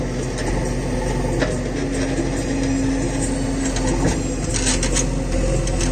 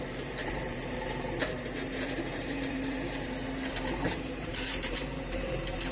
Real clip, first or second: first